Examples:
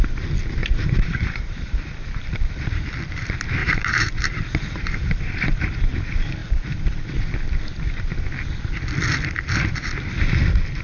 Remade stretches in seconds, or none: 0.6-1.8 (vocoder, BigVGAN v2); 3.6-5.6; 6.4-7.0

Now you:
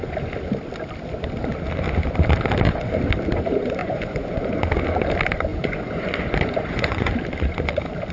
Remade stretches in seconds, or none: 3.8-4.5 (vocoder, Vocos); 5.5-7.1